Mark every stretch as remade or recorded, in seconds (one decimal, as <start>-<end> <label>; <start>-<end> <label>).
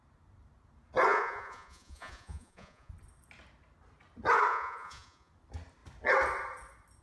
0.0-1.1 recorded; 1.1-2.9 remade; 2.9-4.5 recorded; 4.5-5.3 remade; 5.3-7.0 recorded